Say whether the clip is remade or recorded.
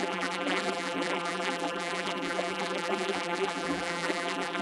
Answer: remade